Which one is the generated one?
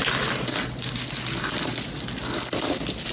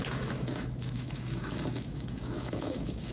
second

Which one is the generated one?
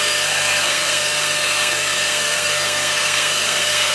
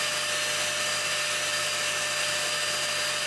first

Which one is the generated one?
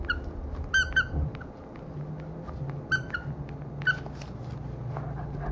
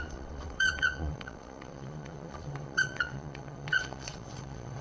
second